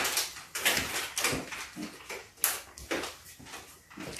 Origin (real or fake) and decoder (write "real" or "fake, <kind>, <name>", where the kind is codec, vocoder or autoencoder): real